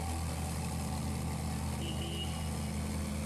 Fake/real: real